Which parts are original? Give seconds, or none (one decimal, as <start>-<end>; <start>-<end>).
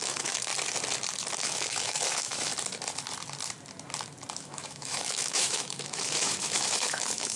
0.5-1.4; 2.5-4.4